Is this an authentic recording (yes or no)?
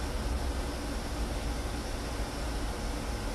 yes